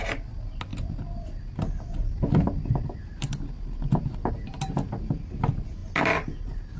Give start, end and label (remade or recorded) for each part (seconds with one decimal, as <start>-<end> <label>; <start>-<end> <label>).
0.0-6.8 recorded